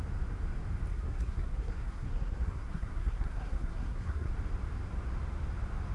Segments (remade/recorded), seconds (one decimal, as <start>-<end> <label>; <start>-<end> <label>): 0.0-0.9 recorded; 0.9-4.3 remade; 4.3-5.9 recorded